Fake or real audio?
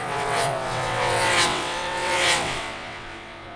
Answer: fake